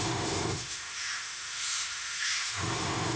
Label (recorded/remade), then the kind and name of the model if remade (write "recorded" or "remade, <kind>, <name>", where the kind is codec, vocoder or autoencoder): remade, autoencoder, DAC-VAE